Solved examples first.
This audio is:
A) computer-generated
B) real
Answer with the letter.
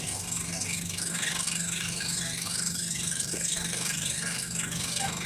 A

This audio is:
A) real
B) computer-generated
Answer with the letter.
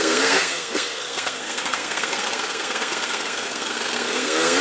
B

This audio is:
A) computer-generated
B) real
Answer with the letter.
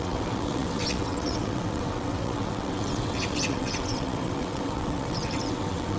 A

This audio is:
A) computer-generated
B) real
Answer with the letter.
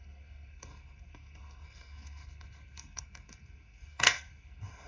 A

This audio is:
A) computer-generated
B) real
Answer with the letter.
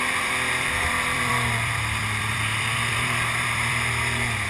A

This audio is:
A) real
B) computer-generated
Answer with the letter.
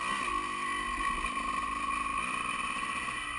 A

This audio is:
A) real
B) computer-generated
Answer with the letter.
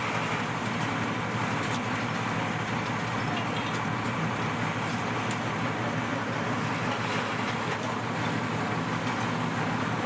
A